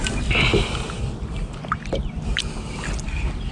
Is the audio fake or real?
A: real